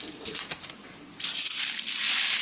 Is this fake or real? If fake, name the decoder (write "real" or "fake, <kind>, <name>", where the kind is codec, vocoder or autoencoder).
real